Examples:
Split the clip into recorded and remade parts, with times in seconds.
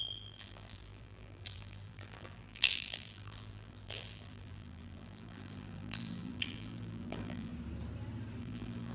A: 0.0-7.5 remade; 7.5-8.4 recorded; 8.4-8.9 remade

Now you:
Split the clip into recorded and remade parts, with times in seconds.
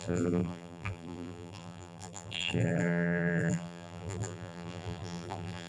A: 0.0-5.7 remade